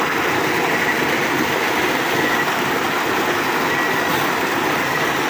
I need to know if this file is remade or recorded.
recorded